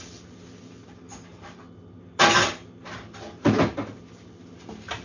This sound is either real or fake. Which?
real